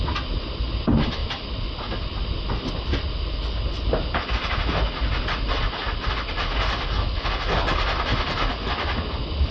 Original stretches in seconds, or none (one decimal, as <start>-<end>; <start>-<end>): 0.0-9.5